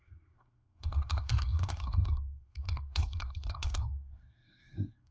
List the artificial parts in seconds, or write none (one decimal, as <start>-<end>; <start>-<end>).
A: 0.0-5.1

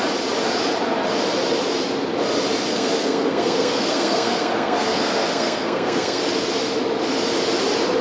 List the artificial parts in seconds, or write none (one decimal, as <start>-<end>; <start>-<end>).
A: 2.7-6.2